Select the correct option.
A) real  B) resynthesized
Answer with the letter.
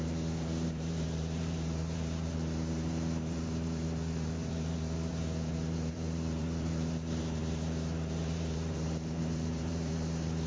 B